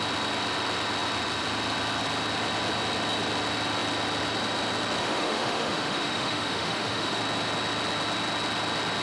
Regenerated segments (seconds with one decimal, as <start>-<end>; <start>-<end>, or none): 5.0-7.2